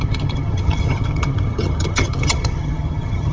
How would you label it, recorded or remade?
remade